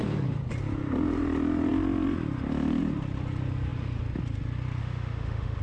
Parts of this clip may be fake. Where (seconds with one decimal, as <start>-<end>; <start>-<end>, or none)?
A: 4.8-5.6